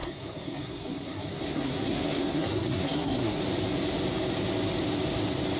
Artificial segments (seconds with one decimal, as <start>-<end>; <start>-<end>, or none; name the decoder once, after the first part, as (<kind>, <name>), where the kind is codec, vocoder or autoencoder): 0.0-3.4 (codec, SNAC)

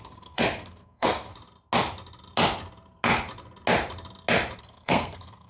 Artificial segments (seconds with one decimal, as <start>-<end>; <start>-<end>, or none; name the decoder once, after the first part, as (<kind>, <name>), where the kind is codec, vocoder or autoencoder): 0.0-1.3 (codec, SNAC); 4.6-5.5

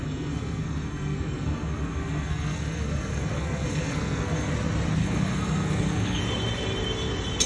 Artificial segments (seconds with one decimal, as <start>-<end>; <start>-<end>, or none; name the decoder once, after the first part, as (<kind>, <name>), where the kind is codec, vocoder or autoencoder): 0.0-4.5 (codec, SNAC); 5.0-6.2